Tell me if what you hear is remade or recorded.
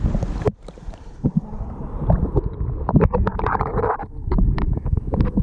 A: remade